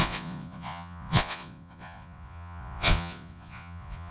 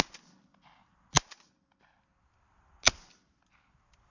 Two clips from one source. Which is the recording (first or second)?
second